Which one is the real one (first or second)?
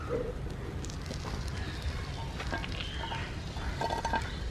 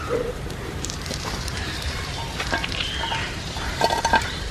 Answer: first